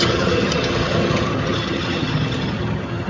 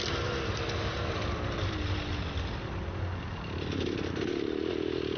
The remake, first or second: first